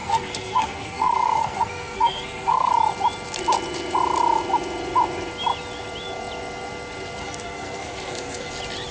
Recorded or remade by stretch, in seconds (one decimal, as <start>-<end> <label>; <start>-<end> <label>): 0.0-2.7 remade; 2.7-7.2 recorded; 7.2-8.5 remade; 8.5-8.9 recorded